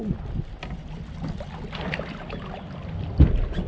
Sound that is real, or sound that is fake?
real